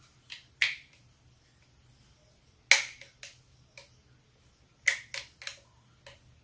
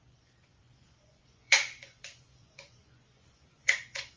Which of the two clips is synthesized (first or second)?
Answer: second